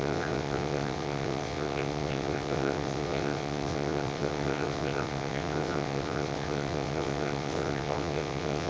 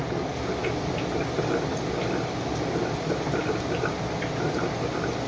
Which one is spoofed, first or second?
first